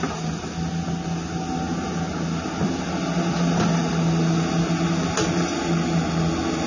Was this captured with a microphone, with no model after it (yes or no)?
yes